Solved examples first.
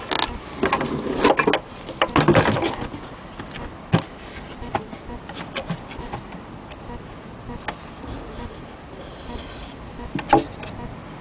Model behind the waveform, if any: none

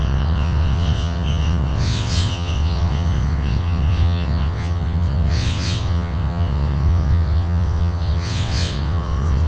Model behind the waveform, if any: vocoder, WaveNeXt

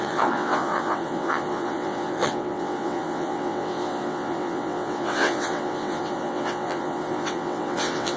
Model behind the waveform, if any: vocoder, WaveNeXt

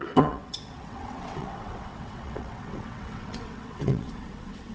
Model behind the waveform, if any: vocoder, WaveNeXt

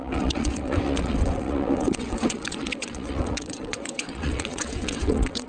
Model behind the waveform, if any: vocoder, WaveNeXt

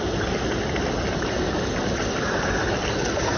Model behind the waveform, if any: none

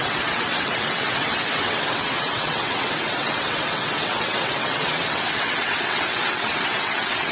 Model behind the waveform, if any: vocoder, WaveNeXt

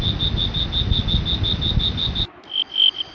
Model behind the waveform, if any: none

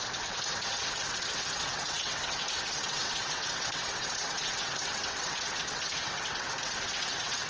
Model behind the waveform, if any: vocoder, WaveNeXt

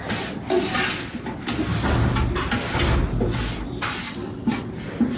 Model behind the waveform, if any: none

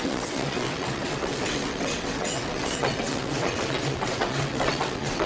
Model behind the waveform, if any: vocoder, WaveNeXt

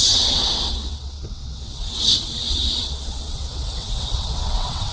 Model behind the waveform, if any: vocoder, WaveNeXt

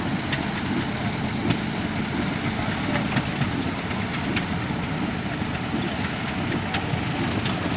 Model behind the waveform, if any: none